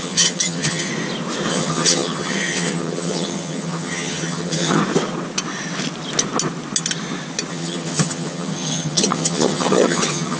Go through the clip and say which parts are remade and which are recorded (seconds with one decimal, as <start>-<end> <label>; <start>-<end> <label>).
0.0-0.9 remade; 0.9-1.5 recorded; 1.5-4.8 remade; 4.8-7.5 recorded; 7.5-10.4 remade